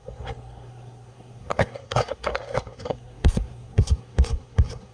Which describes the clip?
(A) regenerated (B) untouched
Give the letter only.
A